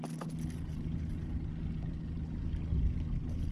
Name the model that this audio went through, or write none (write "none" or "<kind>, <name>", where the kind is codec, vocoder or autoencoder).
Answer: none